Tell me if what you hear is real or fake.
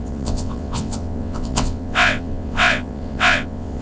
fake